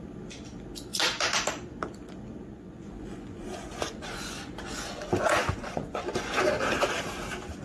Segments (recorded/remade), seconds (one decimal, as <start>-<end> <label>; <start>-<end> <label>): 0.0-2.5 recorded; 2.5-6.4 remade; 6.4-7.6 recorded